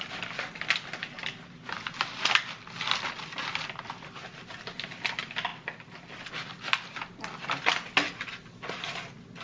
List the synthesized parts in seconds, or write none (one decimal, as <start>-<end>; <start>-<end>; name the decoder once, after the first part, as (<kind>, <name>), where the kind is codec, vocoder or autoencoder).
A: none